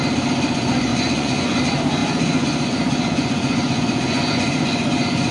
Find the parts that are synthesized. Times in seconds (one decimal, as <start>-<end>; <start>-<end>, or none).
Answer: 0.9-1.6; 2.0-5.3